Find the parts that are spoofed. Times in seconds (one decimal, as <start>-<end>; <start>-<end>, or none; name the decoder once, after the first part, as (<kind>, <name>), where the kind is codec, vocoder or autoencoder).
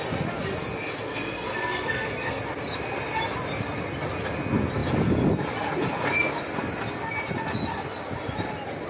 1.0-2.4 (codec, SNAC)